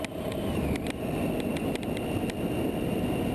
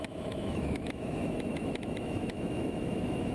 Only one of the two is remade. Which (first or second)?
second